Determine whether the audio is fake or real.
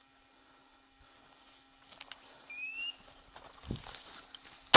real